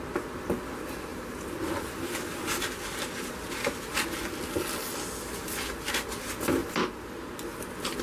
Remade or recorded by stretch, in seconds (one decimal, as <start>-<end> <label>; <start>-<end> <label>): 0.0-8.0 recorded

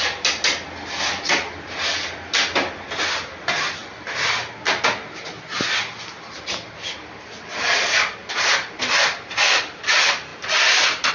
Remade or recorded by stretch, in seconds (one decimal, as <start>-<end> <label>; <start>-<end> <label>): 0.0-11.1 recorded